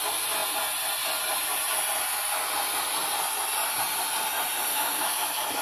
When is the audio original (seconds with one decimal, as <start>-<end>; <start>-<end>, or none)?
0.0-4.7